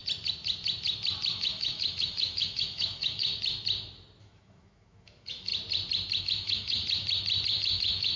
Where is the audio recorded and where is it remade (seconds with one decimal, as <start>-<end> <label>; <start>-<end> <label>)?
0.0-1.3 recorded; 1.3-3.3 remade; 3.3-4.2 recorded; 4.2-5.5 remade; 5.5-6.2 recorded; 6.2-6.8 remade; 6.8-7.5 recorded; 7.5-8.2 remade